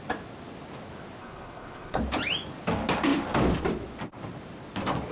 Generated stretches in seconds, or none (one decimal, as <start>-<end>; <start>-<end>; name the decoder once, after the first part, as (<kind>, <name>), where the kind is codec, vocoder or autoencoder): 1.2-2.0 (codec, HILCodec)